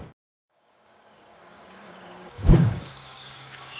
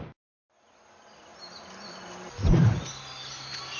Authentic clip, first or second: second